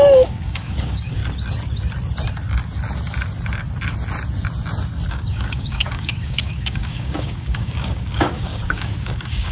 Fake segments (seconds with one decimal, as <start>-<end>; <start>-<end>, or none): 0.0-1.2; 5.1-9.5